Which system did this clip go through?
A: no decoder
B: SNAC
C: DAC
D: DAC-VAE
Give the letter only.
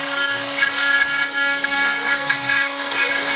B